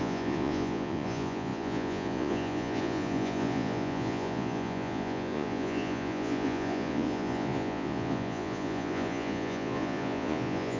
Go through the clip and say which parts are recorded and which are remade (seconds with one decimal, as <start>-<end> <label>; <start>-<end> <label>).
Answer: 0.0-10.8 remade